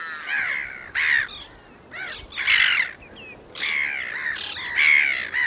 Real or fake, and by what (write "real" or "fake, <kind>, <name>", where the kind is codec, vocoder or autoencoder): real